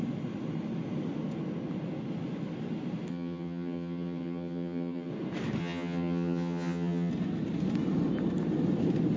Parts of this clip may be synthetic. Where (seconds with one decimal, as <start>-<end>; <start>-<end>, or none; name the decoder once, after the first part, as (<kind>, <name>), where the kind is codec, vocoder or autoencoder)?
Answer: 3.1-5.1 (vocoder, HiFi-GAN); 5.6-7.1